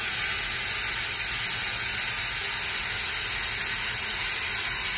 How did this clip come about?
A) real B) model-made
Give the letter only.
A